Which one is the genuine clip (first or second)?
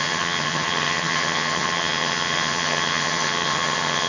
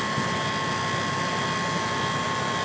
second